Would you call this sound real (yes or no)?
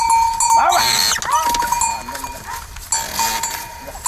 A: yes